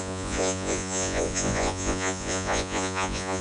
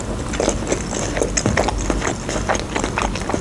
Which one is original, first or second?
second